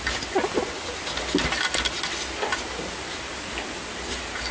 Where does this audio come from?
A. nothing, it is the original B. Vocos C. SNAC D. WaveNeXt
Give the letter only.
A